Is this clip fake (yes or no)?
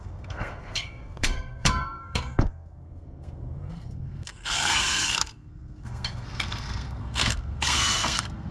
yes